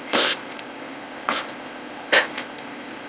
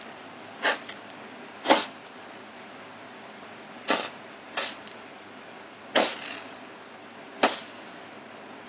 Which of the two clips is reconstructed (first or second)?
first